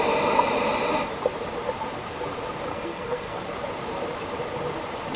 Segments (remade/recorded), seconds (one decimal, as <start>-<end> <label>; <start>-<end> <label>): 0.0-2.7 recorded; 2.7-3.4 remade; 3.4-5.2 recorded